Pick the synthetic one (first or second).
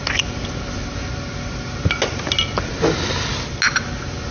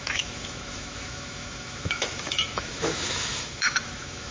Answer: second